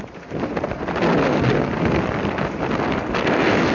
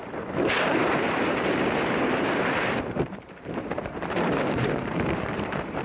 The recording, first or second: first